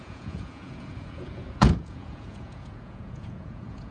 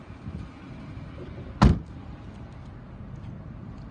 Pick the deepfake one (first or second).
first